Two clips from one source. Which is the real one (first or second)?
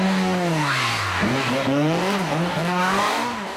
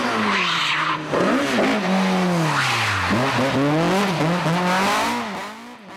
second